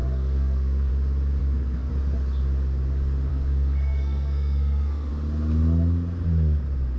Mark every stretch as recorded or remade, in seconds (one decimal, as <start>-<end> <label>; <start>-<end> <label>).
0.0-0.9 remade; 0.9-1.4 recorded; 1.4-1.9 remade; 1.9-3.3 recorded; 3.3-5.1 remade; 5.1-7.0 recorded